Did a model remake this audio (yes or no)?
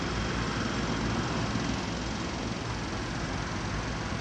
no